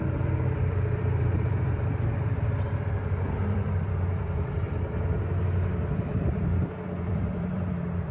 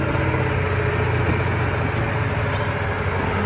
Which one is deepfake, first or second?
first